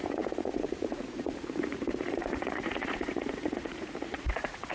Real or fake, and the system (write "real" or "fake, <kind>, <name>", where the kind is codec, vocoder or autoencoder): fake, vocoder, Vocos